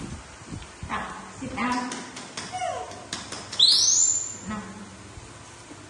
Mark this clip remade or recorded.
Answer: recorded